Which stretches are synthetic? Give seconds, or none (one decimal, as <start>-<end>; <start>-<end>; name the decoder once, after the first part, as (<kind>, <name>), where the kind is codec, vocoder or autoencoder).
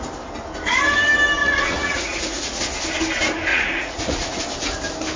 1.4-2.6 (vocoder, Vocos); 3.5-4.4